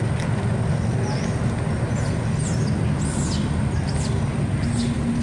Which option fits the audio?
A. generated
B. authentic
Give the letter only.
B